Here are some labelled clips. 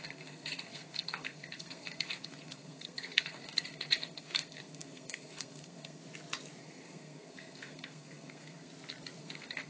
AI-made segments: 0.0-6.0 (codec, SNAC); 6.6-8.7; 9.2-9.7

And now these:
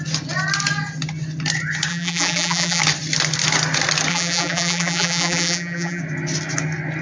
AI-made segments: 1.9-2.8 (vocoder, BigVGAN v2); 4.1-6.0

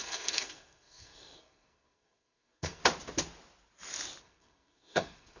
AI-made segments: 0.0-2.8 (codec, SNAC); 4.2-5.4

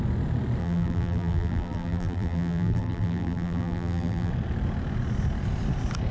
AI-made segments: 0.6-4.3 (vocoder, BigVGAN v2)

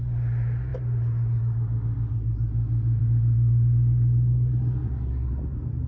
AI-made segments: none

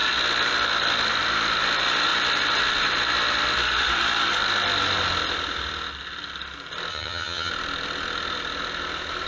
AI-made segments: 6.9-7.5 (vocoder, HiFi-GAN)

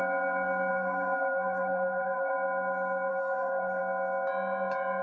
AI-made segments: 0.7-2.3 (codec, SNAC); 3.1-3.8

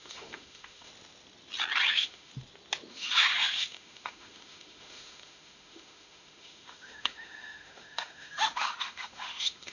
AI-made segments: 0.0-0.9 (autoencoder, DAC-VAE); 1.9-2.3; 2.9-9.7